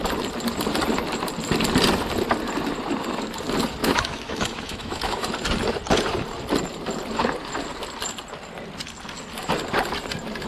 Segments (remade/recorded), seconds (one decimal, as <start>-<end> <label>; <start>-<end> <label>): 0.0-3.8 recorded; 3.8-5.3 remade; 5.3-10.5 recorded